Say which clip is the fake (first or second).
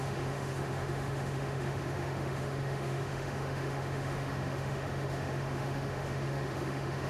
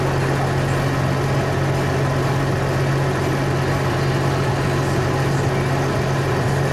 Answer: first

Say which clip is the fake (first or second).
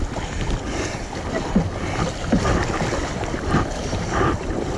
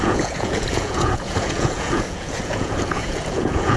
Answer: second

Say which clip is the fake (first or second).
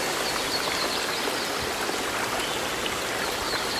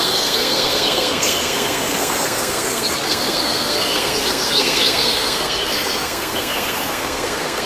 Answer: second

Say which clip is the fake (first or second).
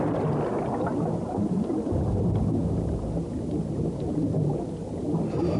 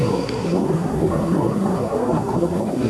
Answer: second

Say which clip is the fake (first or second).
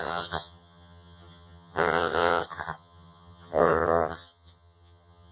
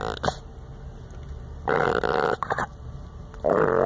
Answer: first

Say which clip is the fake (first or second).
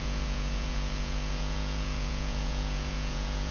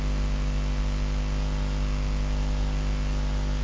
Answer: first